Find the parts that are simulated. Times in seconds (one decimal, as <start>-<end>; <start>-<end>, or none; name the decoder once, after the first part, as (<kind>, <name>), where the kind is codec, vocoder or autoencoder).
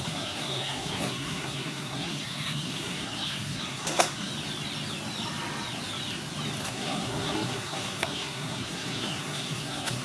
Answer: 0.0-4.3 (codec, SNAC); 6.6-10.0